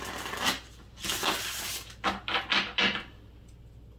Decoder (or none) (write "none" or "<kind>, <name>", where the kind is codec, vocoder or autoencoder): none